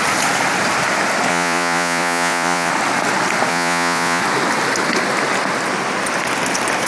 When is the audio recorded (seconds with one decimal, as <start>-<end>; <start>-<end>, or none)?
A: 0.0-1.3; 2.7-3.5; 4.2-6.9